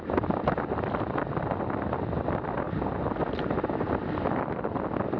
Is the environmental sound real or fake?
real